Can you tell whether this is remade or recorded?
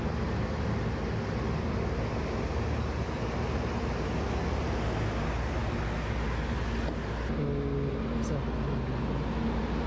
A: recorded